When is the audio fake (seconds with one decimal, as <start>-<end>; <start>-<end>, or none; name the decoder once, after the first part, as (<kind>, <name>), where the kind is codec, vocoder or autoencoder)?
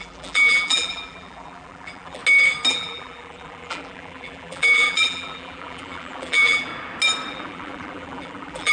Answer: 0.0-2.2 (vocoder, BigVGAN v2); 2.7-6.7; 7.3-8.7